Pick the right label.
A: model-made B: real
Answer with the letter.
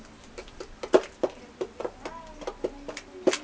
B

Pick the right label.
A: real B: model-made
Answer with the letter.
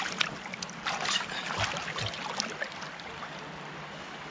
A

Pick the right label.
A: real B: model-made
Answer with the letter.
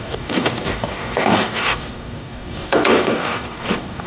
B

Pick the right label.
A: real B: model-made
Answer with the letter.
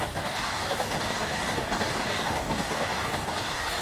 B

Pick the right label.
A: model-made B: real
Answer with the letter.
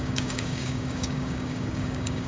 A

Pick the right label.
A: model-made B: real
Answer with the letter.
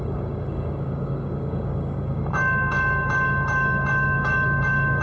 A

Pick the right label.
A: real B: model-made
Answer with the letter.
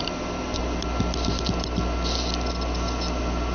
A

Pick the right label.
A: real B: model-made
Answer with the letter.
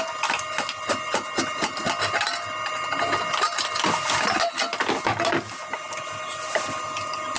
A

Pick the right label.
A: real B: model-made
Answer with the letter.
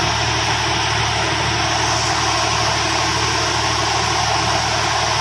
A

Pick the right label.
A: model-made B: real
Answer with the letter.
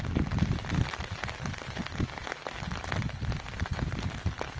B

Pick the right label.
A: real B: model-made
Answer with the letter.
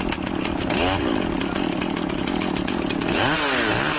A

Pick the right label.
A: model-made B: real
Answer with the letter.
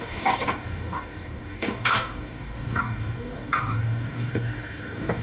A